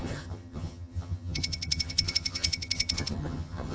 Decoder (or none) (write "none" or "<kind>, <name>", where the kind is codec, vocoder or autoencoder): vocoder, HiFi-GAN